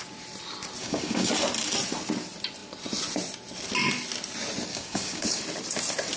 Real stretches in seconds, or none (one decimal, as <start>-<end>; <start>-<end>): 0.0-0.8; 1.3-4.7; 5.4-6.2